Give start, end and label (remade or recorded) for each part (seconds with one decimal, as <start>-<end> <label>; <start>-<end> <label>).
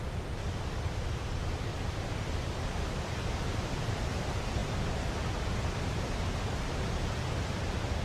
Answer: 0.0-1.7 recorded; 1.7-2.3 remade; 2.3-4.6 recorded; 4.6-5.1 remade; 5.1-8.0 recorded